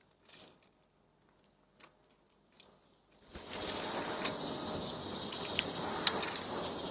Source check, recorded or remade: recorded